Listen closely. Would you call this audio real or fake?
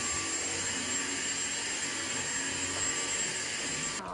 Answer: real